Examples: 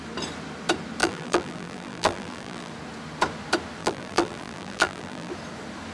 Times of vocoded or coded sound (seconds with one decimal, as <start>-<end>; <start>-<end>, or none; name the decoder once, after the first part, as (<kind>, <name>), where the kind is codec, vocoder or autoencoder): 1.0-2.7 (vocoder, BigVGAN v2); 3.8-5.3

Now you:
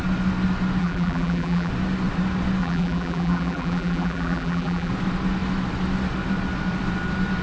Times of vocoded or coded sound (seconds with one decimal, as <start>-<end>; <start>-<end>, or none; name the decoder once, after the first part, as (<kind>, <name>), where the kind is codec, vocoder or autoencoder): 0.8-1.7 (vocoder, BigVGAN v2); 2.6-4.9

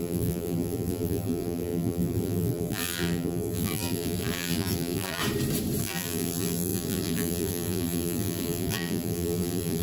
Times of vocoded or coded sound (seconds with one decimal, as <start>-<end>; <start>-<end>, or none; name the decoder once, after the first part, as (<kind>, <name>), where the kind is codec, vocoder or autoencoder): 0.0-5.2 (vocoder, BigVGAN v2); 5.8-9.8

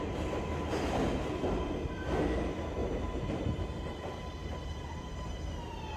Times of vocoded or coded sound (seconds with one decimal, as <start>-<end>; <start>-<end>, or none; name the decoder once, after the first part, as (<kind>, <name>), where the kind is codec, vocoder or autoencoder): 2.8-3.9 (vocoder, BigVGAN v2); 4.4-5.3

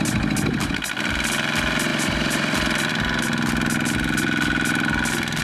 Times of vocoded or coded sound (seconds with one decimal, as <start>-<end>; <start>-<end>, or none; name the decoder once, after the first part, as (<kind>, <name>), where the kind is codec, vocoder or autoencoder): 1.9-2.9 (vocoder, BigVGAN v2)